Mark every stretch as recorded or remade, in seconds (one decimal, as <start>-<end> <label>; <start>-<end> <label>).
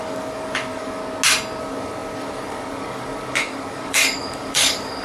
0.0-1.0 remade; 1.0-1.6 recorded; 1.6-5.0 remade